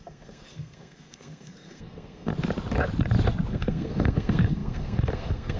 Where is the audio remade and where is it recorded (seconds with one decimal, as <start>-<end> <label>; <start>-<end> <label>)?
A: 0.0-2.3 remade; 2.3-3.5 recorded; 3.5-5.6 remade